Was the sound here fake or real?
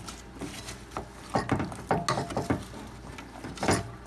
real